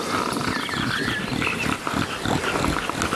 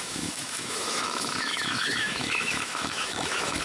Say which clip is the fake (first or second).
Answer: second